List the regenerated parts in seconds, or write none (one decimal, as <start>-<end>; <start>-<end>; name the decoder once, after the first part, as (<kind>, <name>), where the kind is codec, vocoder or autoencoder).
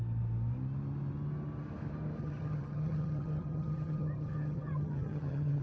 2.2-5.6 (vocoder, HiFi-GAN)